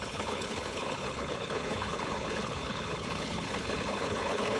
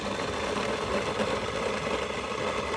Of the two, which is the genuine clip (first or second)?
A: second